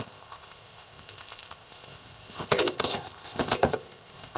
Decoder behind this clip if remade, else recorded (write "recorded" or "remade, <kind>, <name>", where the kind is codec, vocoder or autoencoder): remade, codec, ZipCodec